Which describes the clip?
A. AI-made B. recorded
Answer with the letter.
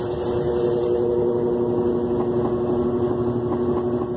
B